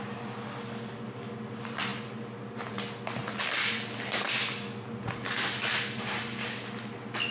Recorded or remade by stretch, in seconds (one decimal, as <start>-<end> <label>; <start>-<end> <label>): 0.0-7.3 recorded